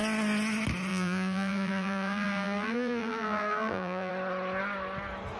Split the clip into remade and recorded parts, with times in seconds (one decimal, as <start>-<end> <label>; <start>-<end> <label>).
0.0-0.9 recorded; 0.9-4.1 remade; 4.1-5.4 recorded